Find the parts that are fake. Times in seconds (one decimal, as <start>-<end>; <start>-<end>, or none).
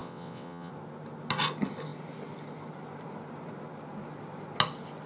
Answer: 0.0-0.7